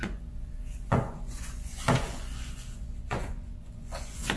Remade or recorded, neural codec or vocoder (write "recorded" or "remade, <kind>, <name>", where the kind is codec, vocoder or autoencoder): remade, vocoder, Vocos